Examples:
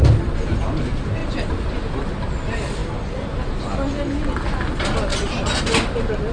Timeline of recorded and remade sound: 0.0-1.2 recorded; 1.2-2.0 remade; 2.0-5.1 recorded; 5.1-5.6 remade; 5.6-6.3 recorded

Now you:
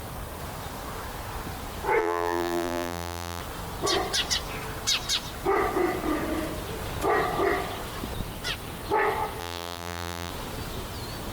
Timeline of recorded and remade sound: 0.0-2.0 recorded; 2.0-3.4 remade; 3.4-9.4 recorded; 9.4-10.3 remade; 10.3-11.3 recorded

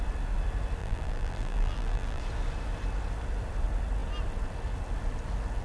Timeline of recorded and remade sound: 0.0-0.8 recorded; 0.8-2.2 remade; 2.2-5.6 recorded

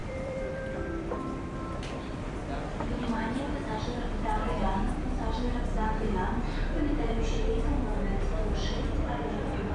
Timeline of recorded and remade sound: 0.0-2.0 remade; 2.0-9.7 recorded

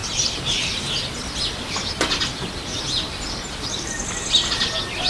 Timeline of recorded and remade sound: 0.0-0.9 remade; 0.9-5.1 recorded

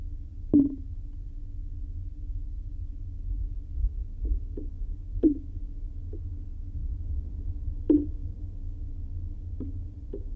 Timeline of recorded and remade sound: 0.0-10.4 recorded

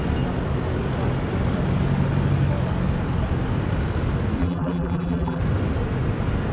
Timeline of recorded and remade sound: 0.0-4.4 recorded; 4.4-5.4 remade; 5.4-6.5 recorded